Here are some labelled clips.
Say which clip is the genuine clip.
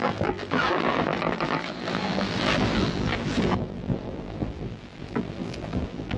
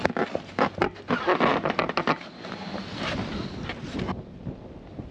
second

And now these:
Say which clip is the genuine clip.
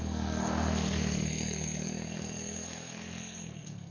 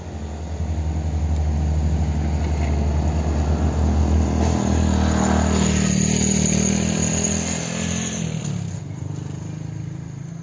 second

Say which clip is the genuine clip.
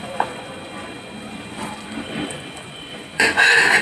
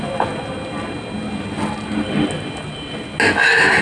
second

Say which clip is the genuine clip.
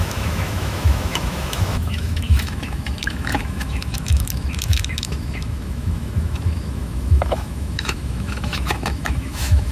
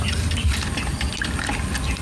second